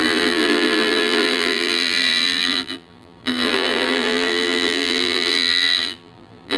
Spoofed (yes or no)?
yes